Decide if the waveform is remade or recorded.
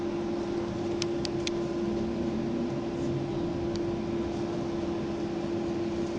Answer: recorded